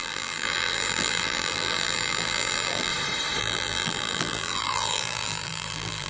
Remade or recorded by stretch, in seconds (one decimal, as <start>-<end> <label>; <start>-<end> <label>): 0.0-2.9 remade; 2.9-3.4 recorded; 3.4-6.1 remade